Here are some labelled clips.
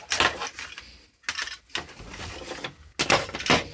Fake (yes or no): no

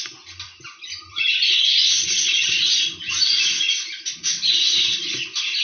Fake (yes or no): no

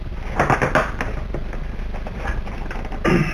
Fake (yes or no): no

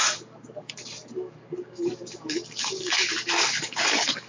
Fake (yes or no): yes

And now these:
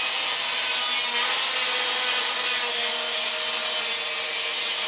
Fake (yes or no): no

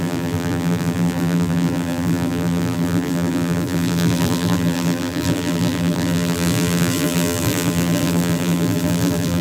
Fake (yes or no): yes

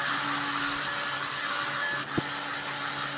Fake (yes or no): no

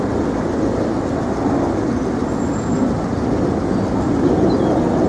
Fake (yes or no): no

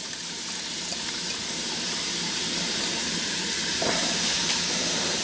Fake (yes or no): yes